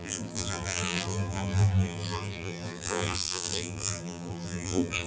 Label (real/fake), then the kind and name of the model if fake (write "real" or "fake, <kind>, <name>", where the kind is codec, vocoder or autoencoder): fake, vocoder, BigVGAN v2